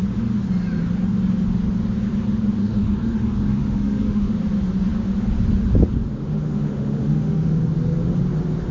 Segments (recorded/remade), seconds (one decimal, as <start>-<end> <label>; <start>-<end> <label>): 0.0-2.6 recorded; 2.6-4.3 remade; 4.3-6.2 recorded; 6.2-7.5 remade; 7.5-8.7 recorded